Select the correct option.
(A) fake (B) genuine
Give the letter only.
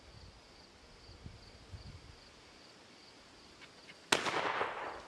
B